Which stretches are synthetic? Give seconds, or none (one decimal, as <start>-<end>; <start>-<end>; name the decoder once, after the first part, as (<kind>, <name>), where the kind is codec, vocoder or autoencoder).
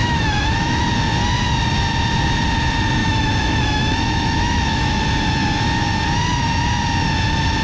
0.0-0.8 (autoencoder, DAC-VAE); 3.0-5.0